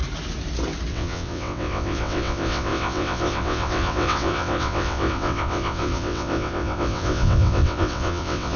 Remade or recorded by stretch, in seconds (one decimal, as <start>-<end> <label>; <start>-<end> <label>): 0.0-0.9 recorded; 0.9-8.6 remade